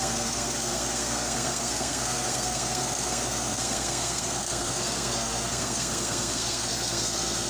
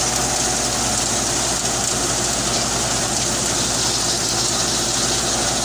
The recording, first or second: second